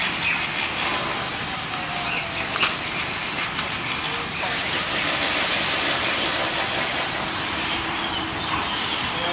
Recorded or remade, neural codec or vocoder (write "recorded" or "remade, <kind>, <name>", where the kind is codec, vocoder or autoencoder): recorded